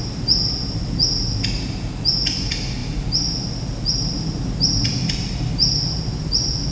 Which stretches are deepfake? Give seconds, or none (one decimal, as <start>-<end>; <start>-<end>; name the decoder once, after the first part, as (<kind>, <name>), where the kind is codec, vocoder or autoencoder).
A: none